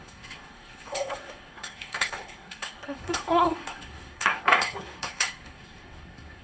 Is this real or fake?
fake